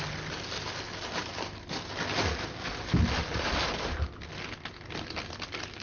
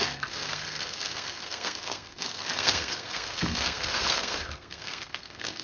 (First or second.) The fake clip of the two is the second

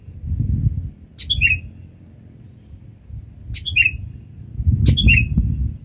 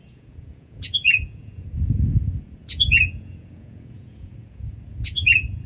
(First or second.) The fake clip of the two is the second